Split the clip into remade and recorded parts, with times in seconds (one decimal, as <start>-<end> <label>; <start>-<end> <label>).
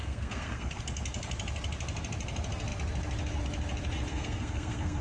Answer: 0.0-0.8 remade; 0.8-4.1 recorded; 4.1-5.0 remade